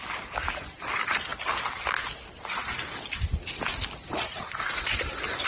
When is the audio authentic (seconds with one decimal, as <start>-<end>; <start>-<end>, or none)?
0.0-5.5